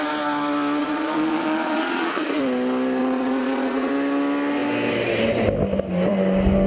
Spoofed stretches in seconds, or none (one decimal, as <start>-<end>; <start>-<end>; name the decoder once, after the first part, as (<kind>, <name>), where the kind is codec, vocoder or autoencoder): 0.8-2.4 (vocoder, Vocos); 3.0-3.9